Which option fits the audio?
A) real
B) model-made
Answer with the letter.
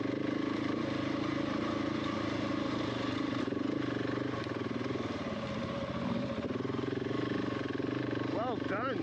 A